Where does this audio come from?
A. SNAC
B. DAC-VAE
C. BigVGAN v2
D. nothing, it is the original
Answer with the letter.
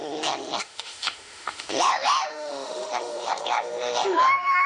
B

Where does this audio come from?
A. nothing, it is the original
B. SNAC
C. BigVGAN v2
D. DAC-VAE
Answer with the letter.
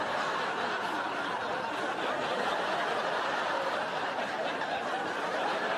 A